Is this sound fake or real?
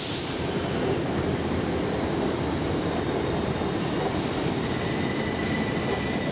fake